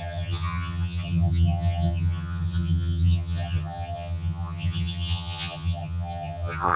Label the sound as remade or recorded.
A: remade